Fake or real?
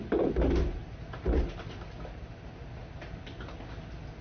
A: real